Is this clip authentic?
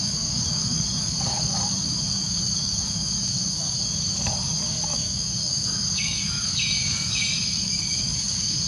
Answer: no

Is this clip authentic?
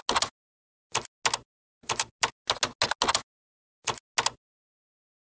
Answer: yes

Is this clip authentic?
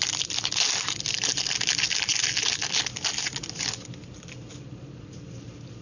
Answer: yes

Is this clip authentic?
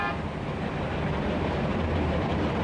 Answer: no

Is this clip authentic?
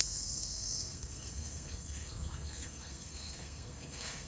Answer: no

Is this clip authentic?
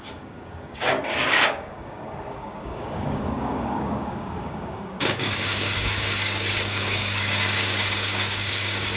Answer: no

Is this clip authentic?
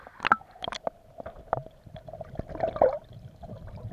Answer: yes